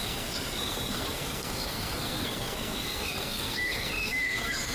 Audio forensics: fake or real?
fake